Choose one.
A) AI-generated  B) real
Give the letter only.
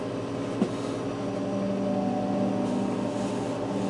B